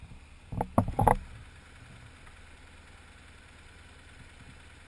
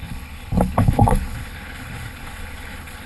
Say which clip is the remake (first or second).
second